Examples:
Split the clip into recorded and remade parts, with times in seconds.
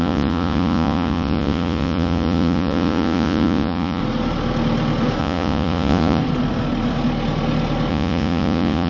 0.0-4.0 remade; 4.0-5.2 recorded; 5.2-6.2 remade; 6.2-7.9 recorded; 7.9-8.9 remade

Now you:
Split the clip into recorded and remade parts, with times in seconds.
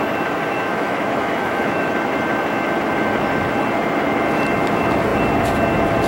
0.0-0.7 recorded; 0.7-1.9 remade; 1.9-6.1 recorded